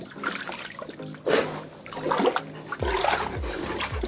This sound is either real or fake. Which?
real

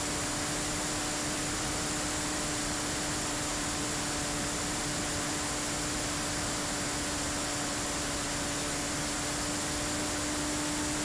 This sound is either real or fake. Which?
real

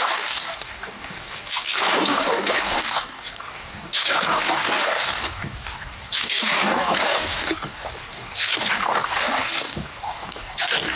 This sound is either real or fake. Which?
fake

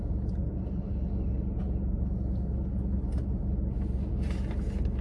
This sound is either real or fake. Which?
real